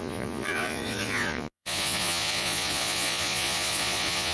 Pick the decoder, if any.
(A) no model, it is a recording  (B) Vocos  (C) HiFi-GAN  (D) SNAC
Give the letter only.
B